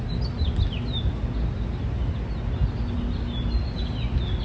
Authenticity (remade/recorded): recorded